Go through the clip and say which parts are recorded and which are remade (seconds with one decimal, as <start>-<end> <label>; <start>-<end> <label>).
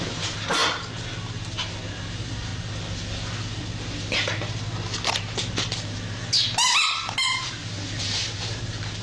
0.0-0.6 remade; 0.6-2.1 recorded; 2.1-2.5 remade; 2.5-7.1 recorded; 7.1-9.0 remade